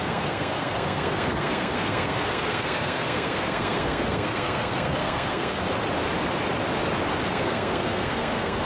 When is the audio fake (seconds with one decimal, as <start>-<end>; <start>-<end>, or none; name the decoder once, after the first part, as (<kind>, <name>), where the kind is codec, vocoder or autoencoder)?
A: 0.0-5.6 (codec, SNAC); 7.3-8.7